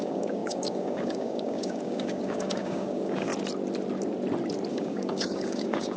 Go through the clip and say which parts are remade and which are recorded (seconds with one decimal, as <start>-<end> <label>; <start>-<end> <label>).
0.0-3.3 remade; 3.3-4.7 recorded; 4.7-6.0 remade